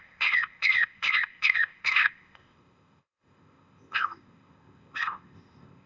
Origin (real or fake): fake